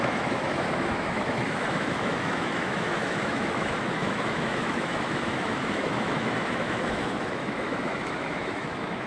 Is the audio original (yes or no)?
no